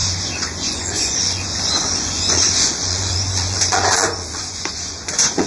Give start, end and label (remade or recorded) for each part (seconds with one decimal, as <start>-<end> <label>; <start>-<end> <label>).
0.0-5.5 remade